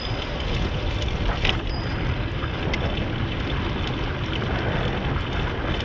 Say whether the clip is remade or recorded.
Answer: recorded